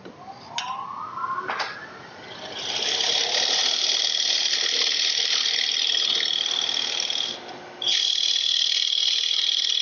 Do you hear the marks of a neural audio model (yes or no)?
no